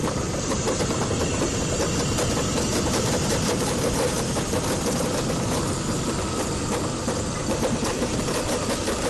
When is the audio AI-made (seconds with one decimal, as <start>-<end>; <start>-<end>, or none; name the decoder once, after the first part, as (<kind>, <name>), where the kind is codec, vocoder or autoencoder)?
0.0-0.8 (vocoder, BigVGAN v2); 2.7-4.8; 6.9-8.2